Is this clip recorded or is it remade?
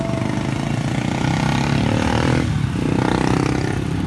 recorded